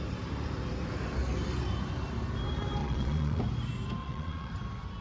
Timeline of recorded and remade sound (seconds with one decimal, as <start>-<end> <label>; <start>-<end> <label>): 0.0-2.8 recorded; 2.8-3.4 remade; 3.4-4.0 recorded; 4.0-4.5 remade; 4.5-5.0 recorded